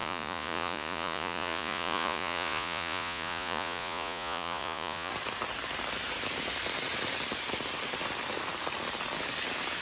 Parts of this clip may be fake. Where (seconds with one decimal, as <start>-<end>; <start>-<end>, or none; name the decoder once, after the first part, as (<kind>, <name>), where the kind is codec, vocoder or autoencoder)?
0.0-5.1 (vocoder, Vocos)